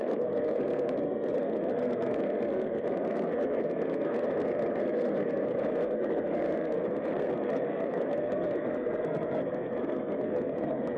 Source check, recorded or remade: remade